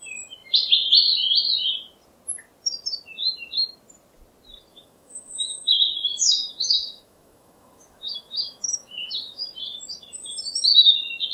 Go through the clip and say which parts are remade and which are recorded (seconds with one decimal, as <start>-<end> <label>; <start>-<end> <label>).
0.0-4.7 recorded; 4.7-9.5 remade; 9.5-11.3 recorded